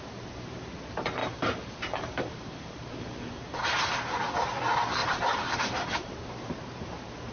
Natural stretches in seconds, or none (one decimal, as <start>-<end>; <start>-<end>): 0.0-1.2; 3.9-5.0; 6.1-7.3

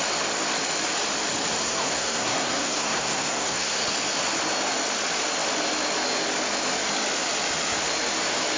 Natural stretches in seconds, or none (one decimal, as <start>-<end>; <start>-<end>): 0.0-1.6; 3.8-8.6

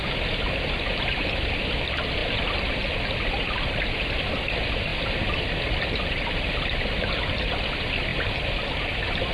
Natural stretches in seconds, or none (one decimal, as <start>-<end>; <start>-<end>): 0.0-0.9; 1.7-9.3